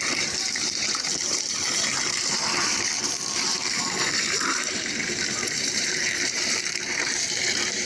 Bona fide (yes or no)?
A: no